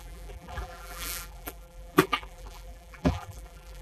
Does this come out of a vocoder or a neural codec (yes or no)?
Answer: yes